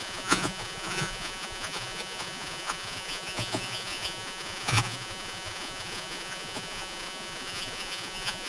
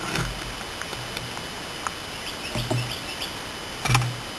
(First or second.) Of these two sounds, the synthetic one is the first